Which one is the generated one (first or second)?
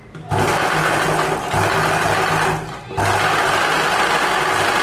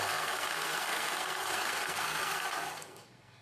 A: second